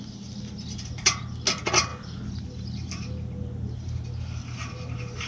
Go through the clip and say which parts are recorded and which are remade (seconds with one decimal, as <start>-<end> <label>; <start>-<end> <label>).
0.0-5.3 recorded